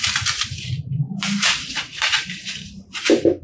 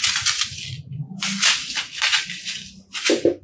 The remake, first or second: first